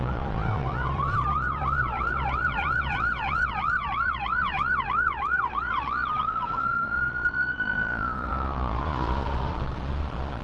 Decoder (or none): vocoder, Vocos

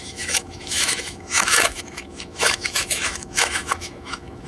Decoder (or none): autoencoder, DAC-VAE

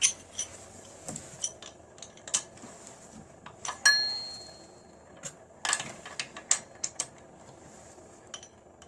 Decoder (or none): none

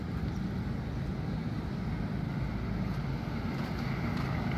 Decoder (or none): none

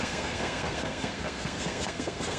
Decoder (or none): codec, SNAC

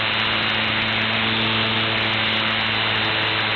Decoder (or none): none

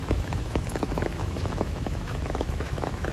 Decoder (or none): autoencoder, DAC-VAE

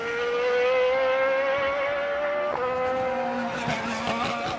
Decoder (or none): none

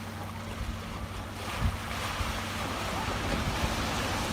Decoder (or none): none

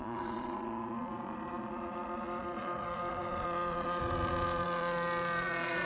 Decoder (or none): vocoder, Vocos